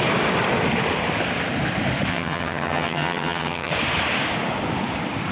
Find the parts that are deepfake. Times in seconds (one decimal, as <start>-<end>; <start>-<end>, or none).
2.1-3.7